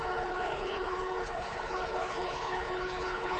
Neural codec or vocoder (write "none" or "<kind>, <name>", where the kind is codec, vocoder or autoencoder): codec, HILCodec